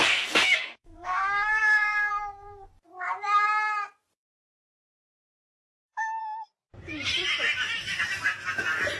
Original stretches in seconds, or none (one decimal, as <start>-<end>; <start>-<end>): 2.1-5.4; 6.2-9.0